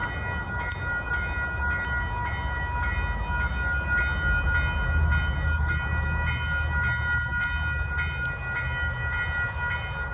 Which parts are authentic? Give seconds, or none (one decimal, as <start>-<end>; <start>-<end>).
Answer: 0.0-10.1